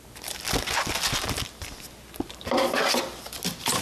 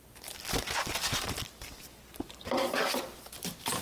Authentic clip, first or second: first